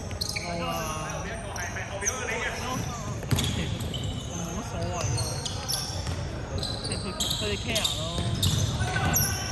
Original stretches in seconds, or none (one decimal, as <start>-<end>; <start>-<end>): 0.9-1.7; 4.7-9.5